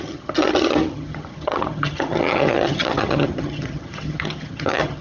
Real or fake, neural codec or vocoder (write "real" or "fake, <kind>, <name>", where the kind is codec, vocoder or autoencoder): fake, vocoder, HiFi-GAN